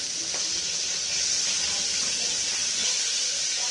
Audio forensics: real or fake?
real